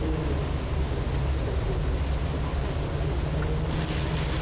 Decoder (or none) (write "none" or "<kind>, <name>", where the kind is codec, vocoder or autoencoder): none